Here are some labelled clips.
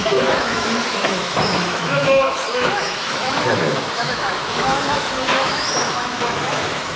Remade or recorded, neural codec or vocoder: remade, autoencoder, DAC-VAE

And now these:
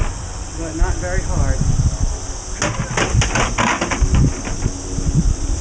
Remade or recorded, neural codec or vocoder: recorded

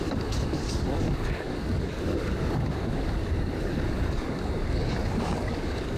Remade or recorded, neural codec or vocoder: remade, codec, DAC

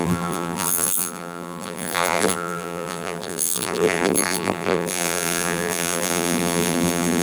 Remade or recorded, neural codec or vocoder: remade, vocoder, BigVGAN v2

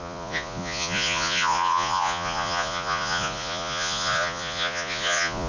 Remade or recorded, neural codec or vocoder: remade, vocoder, Vocos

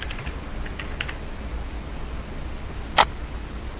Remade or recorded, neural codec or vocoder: recorded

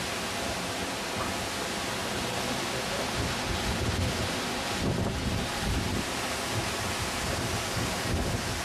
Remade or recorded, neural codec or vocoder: recorded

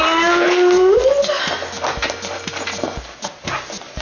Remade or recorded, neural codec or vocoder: recorded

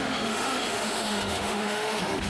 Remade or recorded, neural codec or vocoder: remade, autoencoder, DAC-VAE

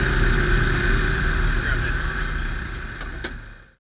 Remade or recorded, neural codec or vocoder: recorded